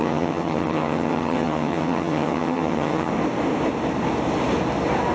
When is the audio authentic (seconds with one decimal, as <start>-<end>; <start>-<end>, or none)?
3.1-5.1